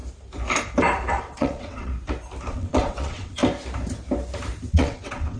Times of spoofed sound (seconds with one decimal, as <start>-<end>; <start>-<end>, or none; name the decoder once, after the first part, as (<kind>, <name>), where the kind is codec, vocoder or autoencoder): 1.2-1.9 (vocoder, WaveNeXt); 2.5-3.4; 4.7-5.4